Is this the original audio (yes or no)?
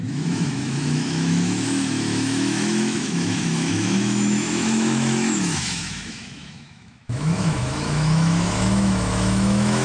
no